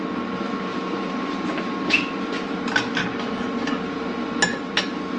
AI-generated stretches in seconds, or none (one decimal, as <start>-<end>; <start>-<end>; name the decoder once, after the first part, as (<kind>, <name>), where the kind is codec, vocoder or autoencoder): 0.7-1.4 (vocoder, BigVGAN v2)